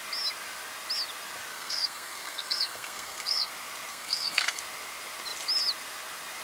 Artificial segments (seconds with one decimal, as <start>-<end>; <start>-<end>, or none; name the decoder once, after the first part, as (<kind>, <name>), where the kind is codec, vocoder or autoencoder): 1.5-3.5 (codec, SNAC); 3.9-4.6